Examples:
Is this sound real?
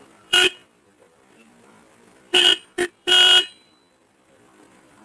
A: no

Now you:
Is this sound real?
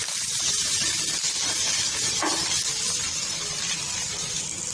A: yes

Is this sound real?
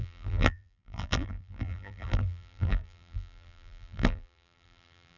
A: no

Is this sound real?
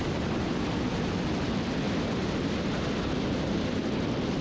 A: no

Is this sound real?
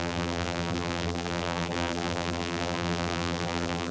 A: no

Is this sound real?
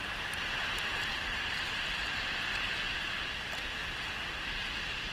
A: yes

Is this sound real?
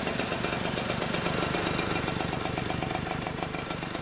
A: yes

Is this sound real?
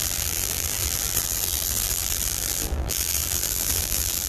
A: no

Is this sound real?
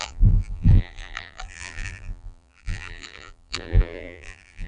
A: no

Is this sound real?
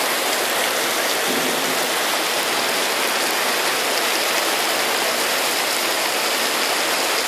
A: yes